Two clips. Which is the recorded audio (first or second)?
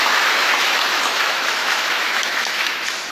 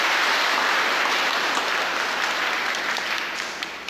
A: second